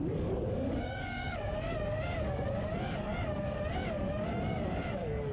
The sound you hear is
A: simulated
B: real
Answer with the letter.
A